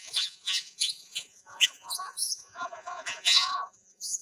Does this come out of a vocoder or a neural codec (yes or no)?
yes